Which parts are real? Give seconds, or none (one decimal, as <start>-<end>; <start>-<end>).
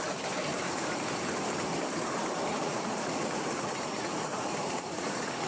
0.0-2.5